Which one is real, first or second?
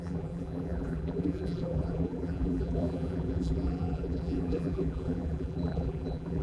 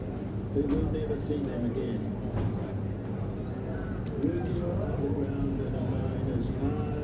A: second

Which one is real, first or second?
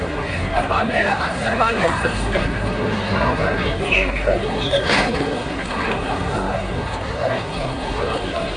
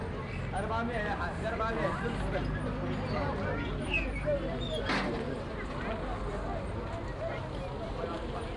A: second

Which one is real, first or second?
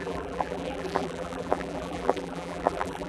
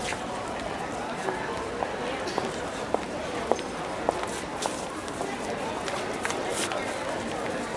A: second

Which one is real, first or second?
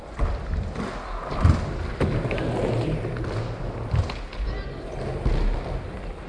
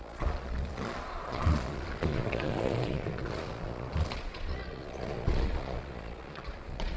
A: first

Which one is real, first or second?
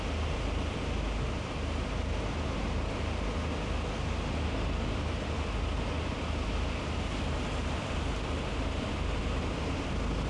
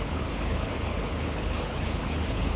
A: first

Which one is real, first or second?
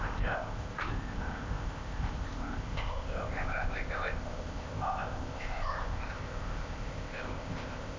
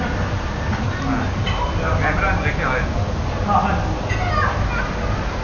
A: second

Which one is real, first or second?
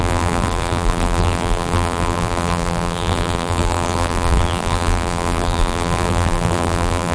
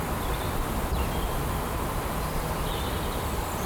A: second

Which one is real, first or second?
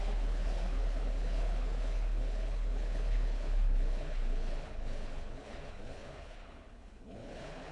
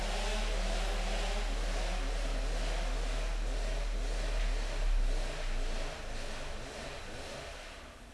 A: second